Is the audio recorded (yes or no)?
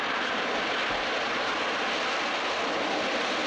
yes